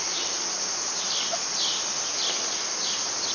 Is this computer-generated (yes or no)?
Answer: no